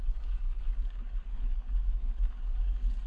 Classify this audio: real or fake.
fake